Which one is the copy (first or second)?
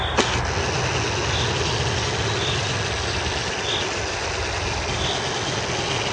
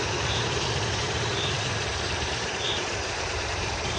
second